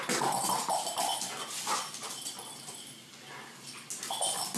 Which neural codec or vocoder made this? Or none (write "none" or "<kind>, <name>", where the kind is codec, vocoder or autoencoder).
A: none